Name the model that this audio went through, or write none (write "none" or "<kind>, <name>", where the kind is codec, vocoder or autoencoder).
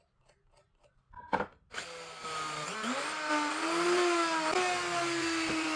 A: none